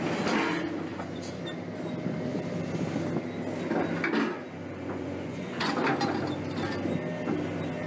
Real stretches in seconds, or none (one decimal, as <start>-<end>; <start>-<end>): 0.0-0.9; 1.4-4.7; 5.7-7.9